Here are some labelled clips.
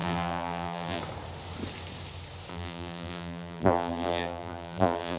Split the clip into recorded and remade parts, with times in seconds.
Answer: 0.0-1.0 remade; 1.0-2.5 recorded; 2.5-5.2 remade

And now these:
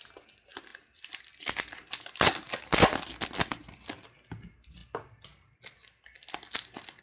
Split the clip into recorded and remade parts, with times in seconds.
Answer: 0.0-7.0 recorded

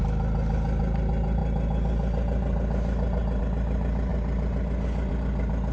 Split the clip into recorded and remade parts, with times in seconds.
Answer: 0.0-5.7 recorded

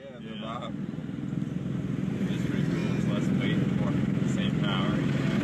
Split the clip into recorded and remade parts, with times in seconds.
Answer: 0.0-5.4 recorded